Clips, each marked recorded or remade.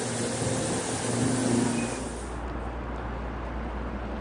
recorded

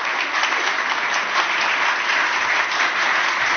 recorded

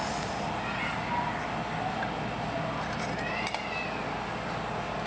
recorded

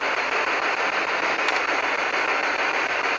recorded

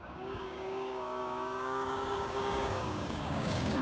remade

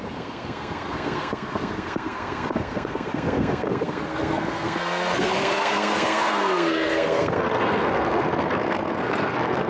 remade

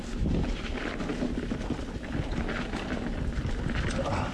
recorded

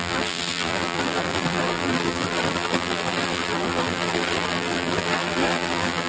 remade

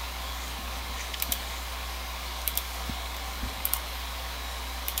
remade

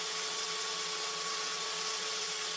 remade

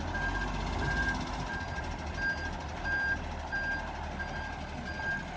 recorded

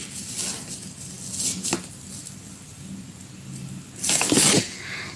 recorded